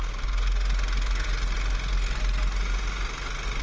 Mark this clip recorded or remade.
recorded